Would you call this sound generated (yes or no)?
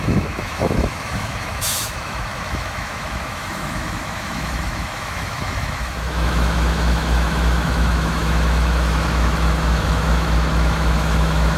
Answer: yes